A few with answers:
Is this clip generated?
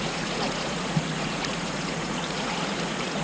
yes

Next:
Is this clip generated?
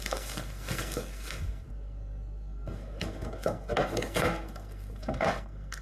yes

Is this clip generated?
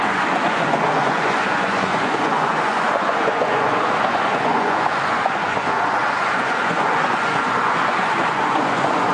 yes